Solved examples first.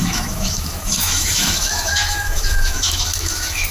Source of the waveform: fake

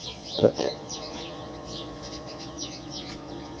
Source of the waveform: fake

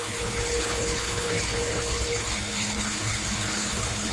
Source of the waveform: fake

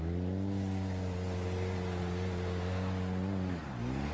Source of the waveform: real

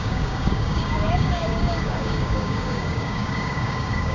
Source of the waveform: fake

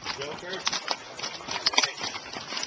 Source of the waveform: real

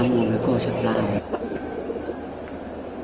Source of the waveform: real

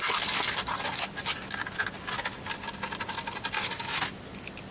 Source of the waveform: real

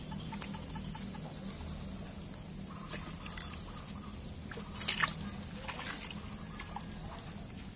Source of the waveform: real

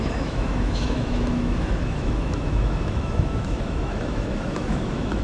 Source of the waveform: fake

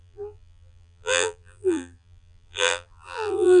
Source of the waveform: fake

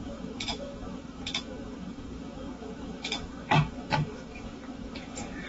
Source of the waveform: fake